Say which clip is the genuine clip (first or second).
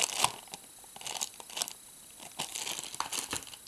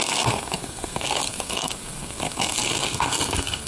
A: first